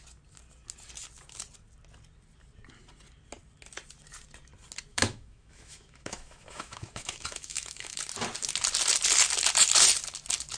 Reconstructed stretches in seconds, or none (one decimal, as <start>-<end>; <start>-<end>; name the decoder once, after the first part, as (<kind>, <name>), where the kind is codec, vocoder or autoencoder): 4.9-8.0 (autoencoder, DAC-VAE)